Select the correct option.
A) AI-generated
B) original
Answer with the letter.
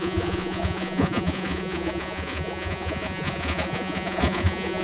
A